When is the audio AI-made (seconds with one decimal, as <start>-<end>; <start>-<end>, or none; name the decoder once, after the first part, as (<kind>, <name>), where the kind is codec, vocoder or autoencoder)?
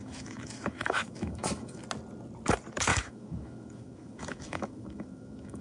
0.0-1.8 (autoencoder, DAC-VAE); 2.9-5.6